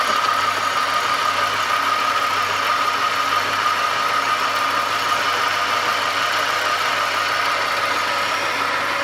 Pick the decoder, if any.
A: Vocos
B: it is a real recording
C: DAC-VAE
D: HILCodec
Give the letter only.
B